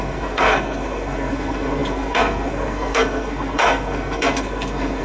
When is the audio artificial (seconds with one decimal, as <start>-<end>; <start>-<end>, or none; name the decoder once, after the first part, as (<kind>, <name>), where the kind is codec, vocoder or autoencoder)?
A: 0.0-5.0 (codec, SNAC)

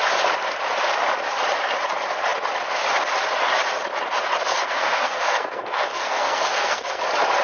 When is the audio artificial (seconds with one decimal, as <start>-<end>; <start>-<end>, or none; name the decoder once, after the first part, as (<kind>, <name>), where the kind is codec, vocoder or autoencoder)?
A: 4.5-7.0 (codec, SNAC)

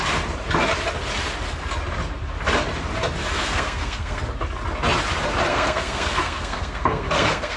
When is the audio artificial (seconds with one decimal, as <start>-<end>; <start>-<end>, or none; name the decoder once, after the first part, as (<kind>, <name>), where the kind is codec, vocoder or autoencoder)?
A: 3.2-4.2 (codec, SNAC); 5.5-7.6

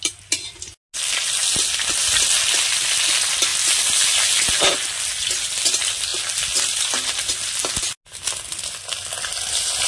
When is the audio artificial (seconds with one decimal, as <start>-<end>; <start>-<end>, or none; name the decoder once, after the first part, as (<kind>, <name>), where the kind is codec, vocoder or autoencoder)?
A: none

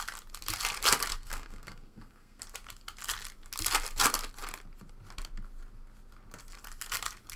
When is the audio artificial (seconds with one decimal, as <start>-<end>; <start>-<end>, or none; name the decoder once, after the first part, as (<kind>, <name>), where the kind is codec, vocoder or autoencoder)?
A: 1.1-2.4 (codec, SNAC)

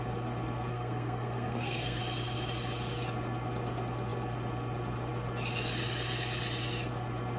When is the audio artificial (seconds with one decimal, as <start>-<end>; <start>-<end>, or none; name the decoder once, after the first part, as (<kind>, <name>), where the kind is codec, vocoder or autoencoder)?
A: 0.7-2.0 (codec, SNAC)